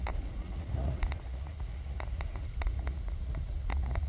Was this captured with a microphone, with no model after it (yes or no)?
no